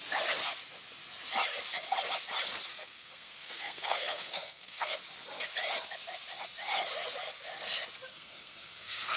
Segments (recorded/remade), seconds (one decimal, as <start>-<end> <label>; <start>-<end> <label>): 0.0-2.7 recorded; 2.7-5.0 remade; 5.0-8.1 recorded; 8.1-9.2 remade